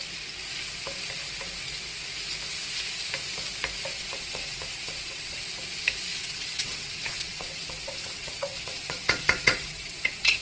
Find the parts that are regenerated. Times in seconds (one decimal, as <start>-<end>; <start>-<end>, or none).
3.9-5.4; 6.1-10.4